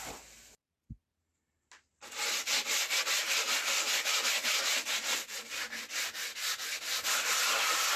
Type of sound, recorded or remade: recorded